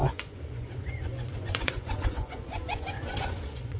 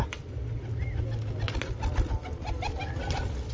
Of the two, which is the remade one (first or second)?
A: first